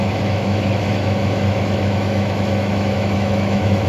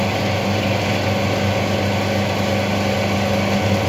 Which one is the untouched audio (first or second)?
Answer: second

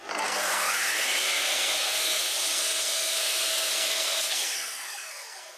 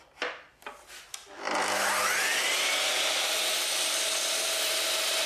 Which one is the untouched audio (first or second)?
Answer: second